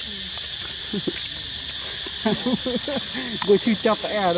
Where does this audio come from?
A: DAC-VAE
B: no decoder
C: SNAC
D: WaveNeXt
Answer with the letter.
B